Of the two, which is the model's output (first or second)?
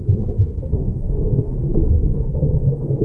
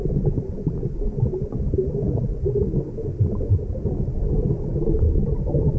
first